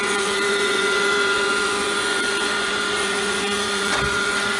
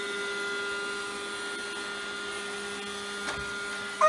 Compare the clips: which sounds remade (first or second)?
first